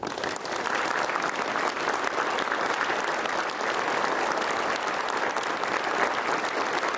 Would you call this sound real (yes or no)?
yes